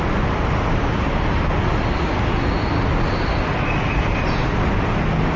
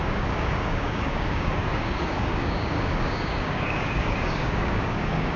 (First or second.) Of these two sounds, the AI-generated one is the second